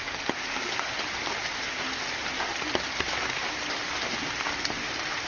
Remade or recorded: recorded